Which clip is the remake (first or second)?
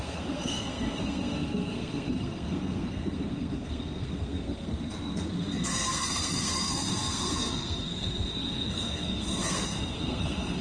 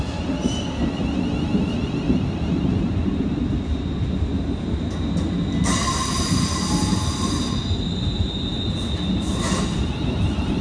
first